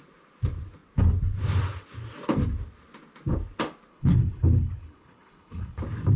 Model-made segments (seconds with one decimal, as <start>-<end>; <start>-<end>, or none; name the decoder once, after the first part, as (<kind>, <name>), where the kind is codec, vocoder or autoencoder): 3.9-5.8 (codec, HILCodec)